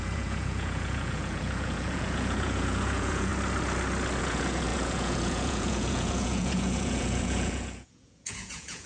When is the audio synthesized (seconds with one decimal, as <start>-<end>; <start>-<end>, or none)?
0.0-3.3; 4.2-8.9